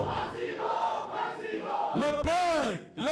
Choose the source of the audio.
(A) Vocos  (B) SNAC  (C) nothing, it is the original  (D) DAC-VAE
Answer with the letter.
B